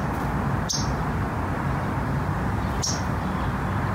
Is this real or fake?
real